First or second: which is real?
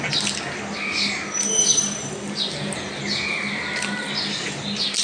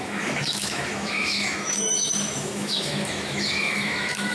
first